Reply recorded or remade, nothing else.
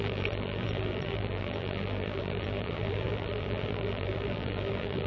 remade